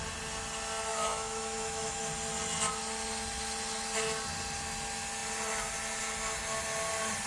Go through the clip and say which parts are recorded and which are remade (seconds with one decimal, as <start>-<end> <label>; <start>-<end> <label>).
0.0-0.9 recorded; 0.9-2.0 remade; 2.0-7.3 recorded